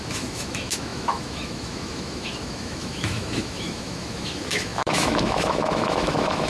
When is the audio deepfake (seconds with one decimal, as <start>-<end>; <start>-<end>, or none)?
0.0-6.5